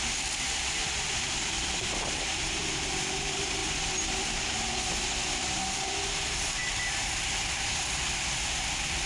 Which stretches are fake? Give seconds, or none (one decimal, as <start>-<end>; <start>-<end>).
0.0-3.6; 5.6-6.6; 7.5-9.1